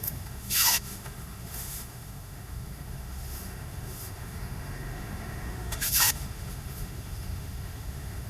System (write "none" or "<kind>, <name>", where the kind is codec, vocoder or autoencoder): autoencoder, DAC-VAE